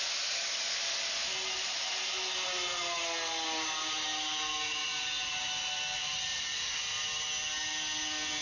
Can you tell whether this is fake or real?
real